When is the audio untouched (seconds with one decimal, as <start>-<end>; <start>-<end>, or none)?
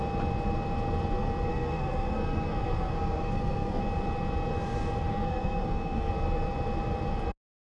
0.0-1.5; 3.8-5.1; 6.1-7.6